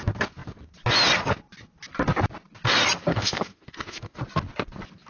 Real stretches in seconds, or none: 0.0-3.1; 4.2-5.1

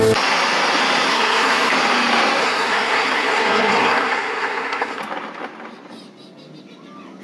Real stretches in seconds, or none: 0.0-1.1; 1.7-2.4; 5.0-7.2

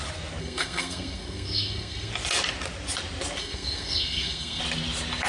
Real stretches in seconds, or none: 0.0-0.4; 2.1-3.4; 4.6-5.3

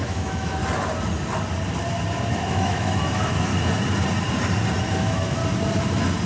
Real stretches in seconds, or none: 0.6-2.4; 3.5-4.8; 5.4-6.3

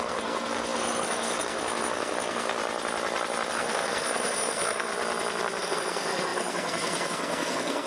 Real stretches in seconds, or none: 2.6-3.5; 4.9-5.6

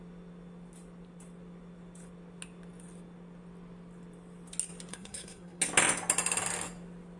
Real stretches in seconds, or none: 0.0-4.9; 5.6-7.2

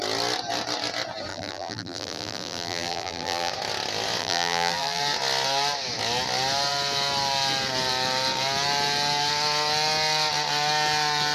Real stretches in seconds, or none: 0.0-1.3; 3.5-4.2; 5.0-11.3